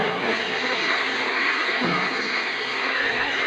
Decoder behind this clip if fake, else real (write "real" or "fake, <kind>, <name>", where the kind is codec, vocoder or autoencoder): fake, codec, SNAC